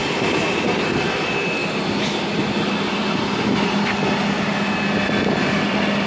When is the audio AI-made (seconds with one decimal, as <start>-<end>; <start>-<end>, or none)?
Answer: none